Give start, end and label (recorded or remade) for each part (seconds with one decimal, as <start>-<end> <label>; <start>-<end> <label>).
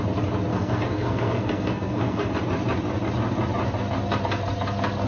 0.0-0.5 recorded; 0.5-2.3 remade; 2.3-5.1 recorded